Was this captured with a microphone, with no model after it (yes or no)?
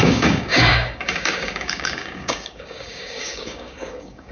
no